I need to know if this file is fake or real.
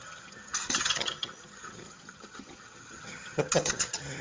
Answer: fake